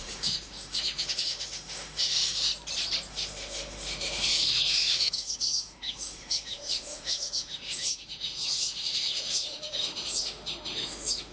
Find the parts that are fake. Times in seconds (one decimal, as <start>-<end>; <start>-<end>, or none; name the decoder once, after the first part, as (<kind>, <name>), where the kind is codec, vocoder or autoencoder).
0.0-2.5 (autoencoder, DAC-VAE); 3.1-11.3